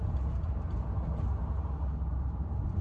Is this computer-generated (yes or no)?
no